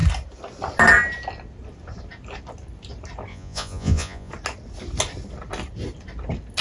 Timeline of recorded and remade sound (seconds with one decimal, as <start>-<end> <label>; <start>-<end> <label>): 0.0-3.3 recorded; 3.3-4.3 remade; 4.3-6.6 recorded